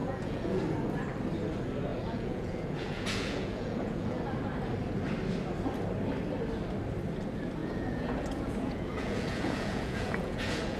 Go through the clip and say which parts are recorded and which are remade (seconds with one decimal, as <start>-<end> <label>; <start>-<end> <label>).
0.0-0.6 remade; 0.6-1.9 recorded; 1.9-4.2 remade; 4.2-7.6 recorded; 7.6-10.8 remade